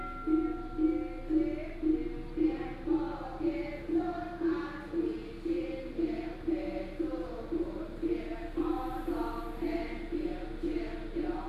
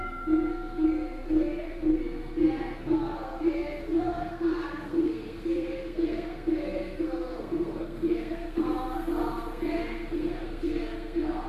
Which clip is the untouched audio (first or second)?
first